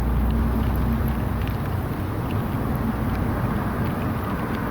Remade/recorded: recorded